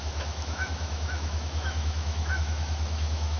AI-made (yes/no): yes